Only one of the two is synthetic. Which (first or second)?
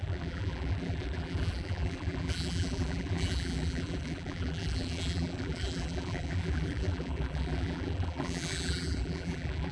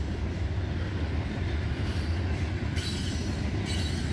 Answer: first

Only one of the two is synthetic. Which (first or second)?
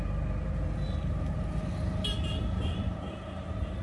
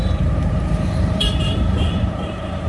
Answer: second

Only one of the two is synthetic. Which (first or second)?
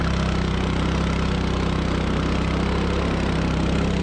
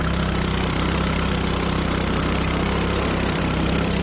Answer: second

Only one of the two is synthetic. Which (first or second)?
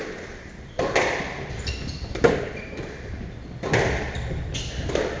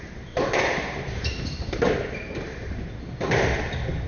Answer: second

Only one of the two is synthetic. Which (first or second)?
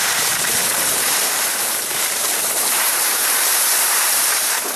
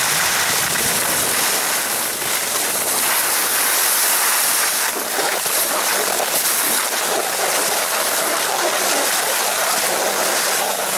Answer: first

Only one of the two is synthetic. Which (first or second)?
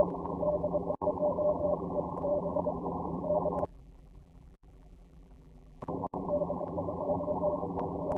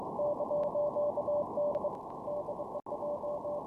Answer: first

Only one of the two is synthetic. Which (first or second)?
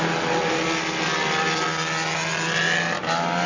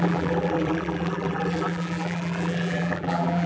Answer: second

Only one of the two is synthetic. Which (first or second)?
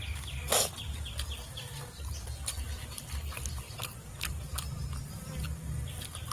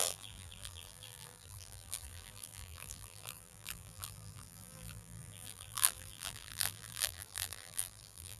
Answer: second